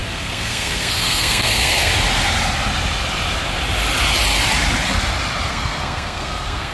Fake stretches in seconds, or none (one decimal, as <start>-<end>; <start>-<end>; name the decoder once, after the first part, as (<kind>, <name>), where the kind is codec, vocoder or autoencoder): 0.0-1.9 (codec, SNAC); 5.5-6.7